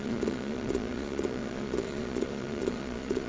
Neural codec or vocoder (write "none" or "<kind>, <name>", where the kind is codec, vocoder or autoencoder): vocoder, Vocos